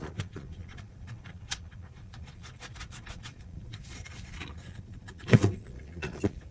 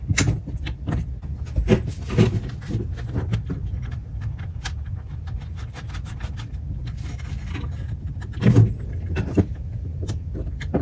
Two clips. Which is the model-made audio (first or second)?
first